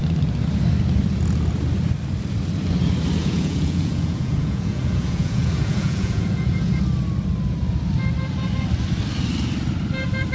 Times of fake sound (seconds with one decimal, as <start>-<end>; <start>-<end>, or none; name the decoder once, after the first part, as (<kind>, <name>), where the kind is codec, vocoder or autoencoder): 3.2-6.8 (vocoder, Vocos)